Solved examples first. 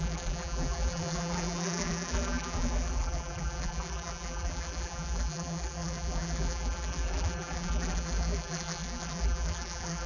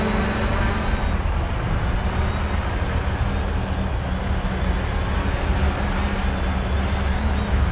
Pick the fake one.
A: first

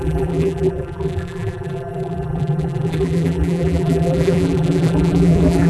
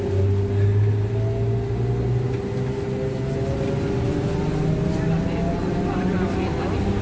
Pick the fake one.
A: first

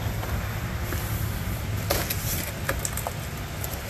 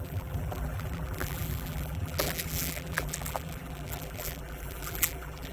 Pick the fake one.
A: second